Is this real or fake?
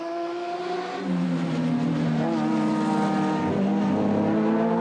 real